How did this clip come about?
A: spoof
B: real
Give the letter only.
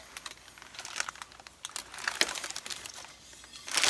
B